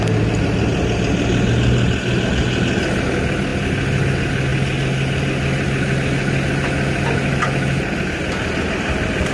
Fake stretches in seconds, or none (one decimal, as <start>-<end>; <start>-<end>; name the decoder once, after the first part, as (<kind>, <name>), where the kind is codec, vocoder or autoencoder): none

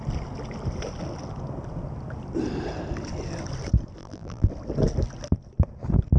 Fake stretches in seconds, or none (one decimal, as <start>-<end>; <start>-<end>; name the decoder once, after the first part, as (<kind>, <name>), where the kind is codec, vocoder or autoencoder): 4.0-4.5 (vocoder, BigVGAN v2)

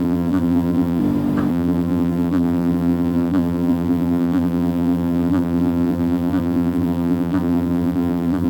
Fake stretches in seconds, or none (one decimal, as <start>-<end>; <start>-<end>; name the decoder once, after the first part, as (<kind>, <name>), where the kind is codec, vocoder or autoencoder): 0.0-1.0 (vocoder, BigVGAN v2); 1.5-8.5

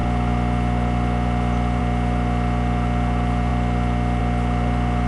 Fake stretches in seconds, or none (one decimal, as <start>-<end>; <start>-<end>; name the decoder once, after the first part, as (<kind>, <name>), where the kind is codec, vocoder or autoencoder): none

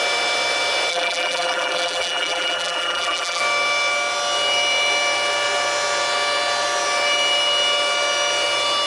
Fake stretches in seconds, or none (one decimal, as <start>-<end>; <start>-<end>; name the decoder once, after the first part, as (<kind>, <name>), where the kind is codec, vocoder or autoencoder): 0.9-3.4 (vocoder, BigVGAN v2)